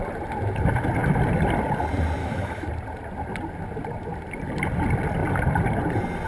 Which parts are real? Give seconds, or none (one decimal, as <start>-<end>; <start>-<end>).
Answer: 0.0-2.2; 2.7-6.3